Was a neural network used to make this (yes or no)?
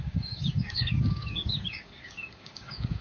yes